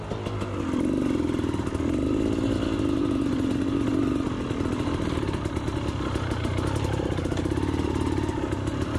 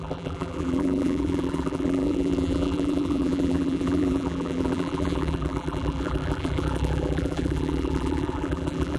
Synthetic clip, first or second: second